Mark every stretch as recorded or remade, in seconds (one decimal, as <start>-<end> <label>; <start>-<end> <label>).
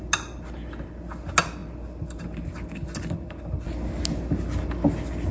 0.0-5.3 recorded